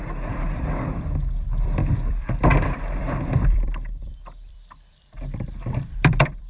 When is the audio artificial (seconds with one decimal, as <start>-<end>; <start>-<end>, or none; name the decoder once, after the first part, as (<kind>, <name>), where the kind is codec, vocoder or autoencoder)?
0.0-6.5 (vocoder, BigVGAN v2)